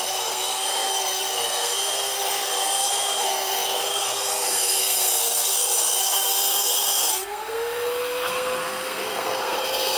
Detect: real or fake fake